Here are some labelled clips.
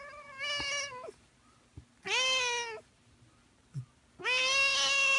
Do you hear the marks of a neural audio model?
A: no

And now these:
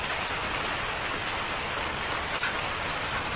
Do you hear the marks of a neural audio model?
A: no